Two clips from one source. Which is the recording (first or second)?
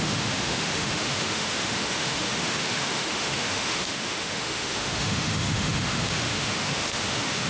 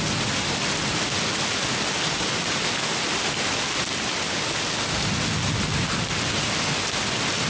second